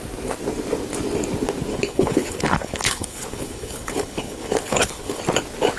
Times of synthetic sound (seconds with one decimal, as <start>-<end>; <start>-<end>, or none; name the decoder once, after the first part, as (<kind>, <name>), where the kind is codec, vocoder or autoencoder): 1.7-5.2 (codec, HILCodec)